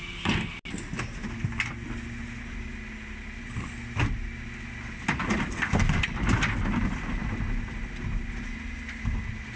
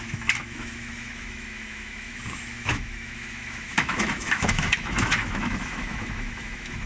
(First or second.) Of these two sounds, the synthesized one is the second